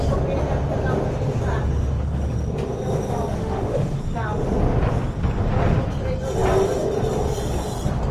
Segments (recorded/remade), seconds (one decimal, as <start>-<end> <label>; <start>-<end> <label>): 0.0-3.4 recorded; 3.4-4.0 remade; 4.0-8.1 recorded